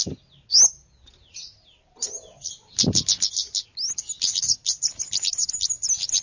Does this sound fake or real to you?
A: real